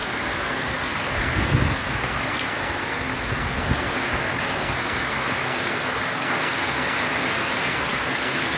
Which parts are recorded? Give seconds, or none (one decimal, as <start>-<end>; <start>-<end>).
none